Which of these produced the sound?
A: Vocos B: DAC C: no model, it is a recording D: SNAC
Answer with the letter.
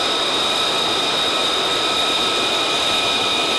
C